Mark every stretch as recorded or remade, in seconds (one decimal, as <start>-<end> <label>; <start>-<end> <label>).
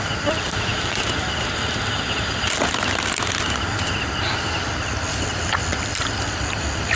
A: 0.0-7.0 recorded